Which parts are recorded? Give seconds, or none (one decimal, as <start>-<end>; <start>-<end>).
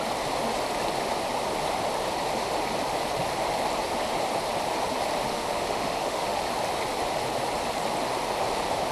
0.0-5.3; 6.4-8.9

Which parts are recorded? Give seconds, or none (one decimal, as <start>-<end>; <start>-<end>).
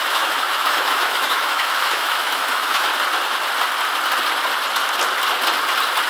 2.9-6.1